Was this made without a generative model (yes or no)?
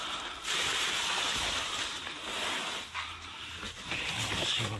yes